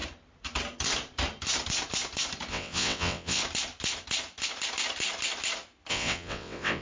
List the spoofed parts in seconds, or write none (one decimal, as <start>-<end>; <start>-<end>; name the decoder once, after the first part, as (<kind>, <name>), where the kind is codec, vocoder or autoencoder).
2.5-3.4 (vocoder, WaveNeXt); 5.9-6.8